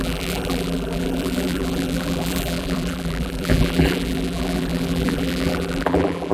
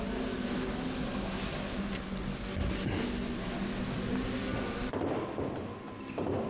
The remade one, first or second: first